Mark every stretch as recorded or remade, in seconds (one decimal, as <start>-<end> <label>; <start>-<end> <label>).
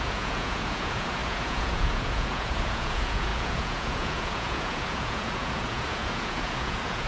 0.0-7.1 remade